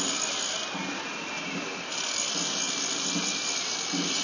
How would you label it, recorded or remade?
recorded